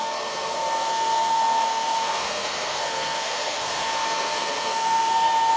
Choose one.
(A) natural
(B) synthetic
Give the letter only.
B